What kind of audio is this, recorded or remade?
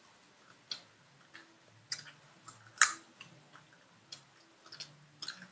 recorded